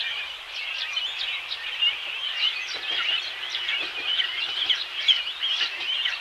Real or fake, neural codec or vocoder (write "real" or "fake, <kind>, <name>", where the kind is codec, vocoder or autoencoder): real